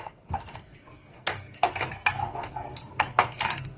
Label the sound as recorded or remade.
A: remade